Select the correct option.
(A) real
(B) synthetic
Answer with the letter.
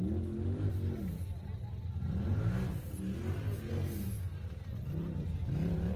A